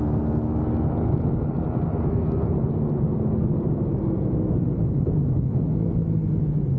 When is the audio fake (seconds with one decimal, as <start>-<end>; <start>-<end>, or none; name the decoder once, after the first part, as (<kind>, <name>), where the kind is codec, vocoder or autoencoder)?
none